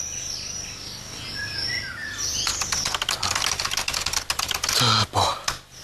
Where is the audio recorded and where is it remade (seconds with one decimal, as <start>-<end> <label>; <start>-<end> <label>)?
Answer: 0.0-5.8 recorded